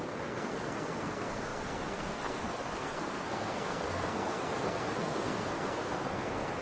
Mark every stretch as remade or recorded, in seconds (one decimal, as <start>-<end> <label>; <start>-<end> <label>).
0.0-6.6 remade